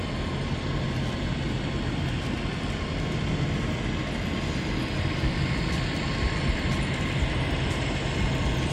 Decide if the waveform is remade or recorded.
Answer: recorded